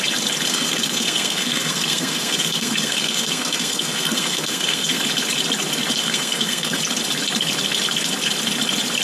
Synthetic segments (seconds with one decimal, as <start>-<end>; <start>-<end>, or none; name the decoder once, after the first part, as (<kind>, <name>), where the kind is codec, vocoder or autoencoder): 0.5-5.0 (codec, SNAC); 6.0-6.8